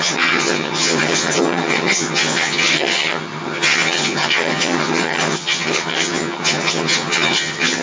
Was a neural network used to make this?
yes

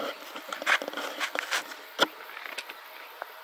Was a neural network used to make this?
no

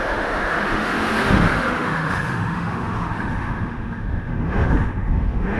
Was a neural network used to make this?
yes